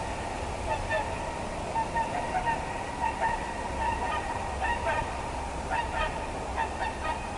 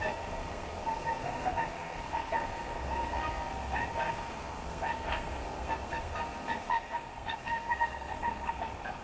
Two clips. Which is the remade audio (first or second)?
second